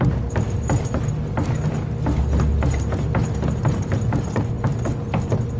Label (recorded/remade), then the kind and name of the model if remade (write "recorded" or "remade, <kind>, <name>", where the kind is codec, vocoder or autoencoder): recorded